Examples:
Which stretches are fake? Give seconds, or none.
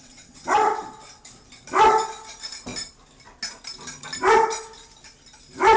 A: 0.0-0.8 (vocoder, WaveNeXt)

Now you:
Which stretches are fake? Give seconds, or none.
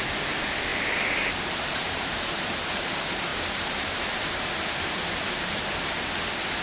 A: 0.7-2.8 (vocoder, BigVGAN v2); 3.3-5.6